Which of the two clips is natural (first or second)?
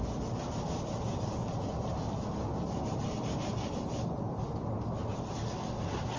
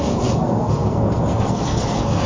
first